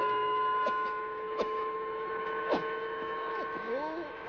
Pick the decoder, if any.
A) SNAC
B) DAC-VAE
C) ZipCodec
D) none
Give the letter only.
B